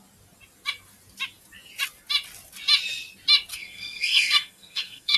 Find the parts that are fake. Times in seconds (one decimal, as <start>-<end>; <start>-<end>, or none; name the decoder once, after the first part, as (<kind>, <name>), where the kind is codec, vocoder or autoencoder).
3.5-5.2 (codec, SNAC)